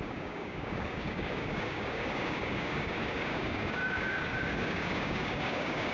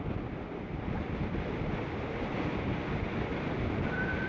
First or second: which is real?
second